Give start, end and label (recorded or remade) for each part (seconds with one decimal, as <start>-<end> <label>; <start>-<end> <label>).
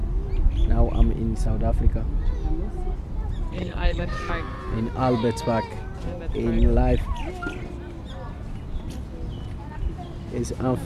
0.0-3.6 recorded; 3.6-4.3 remade; 4.3-10.9 recorded